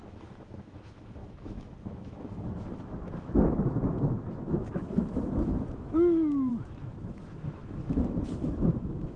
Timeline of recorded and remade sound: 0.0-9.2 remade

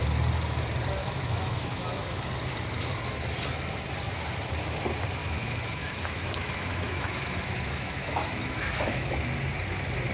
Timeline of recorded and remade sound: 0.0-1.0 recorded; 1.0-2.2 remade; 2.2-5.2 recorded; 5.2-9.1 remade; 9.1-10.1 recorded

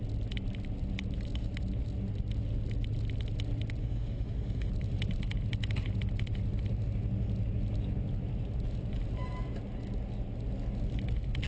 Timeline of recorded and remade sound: 0.0-3.8 recorded; 3.8-4.7 remade; 4.7-11.5 recorded

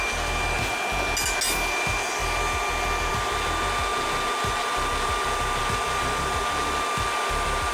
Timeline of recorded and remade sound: 0.0-7.7 recorded

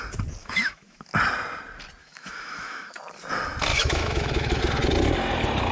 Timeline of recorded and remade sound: 0.0-0.4 recorded; 0.4-1.0 remade; 1.0-2.0 recorded; 2.0-3.0 remade; 3.0-3.7 recorded; 3.7-4.6 remade; 4.6-5.7 recorded